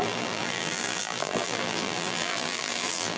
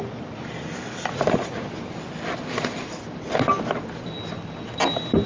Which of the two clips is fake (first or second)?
first